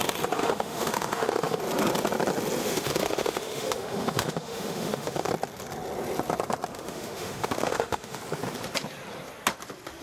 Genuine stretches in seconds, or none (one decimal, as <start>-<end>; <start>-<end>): 0.0-0.4; 1.6-2.6; 5.3-6.7; 8.2-10.0